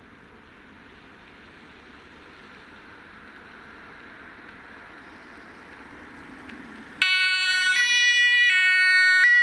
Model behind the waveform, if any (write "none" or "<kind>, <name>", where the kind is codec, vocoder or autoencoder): none